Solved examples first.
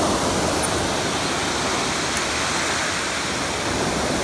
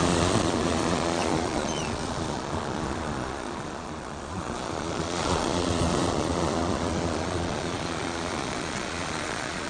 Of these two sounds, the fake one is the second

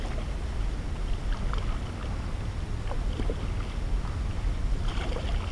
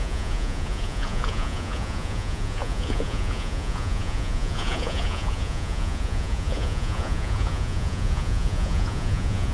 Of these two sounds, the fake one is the second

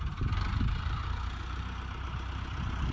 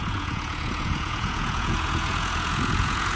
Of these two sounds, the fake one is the second